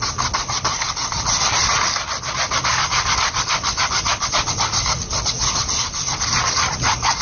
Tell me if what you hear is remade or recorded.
remade